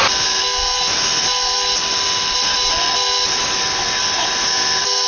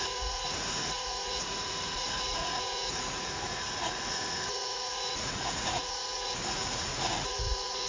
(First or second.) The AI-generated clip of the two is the second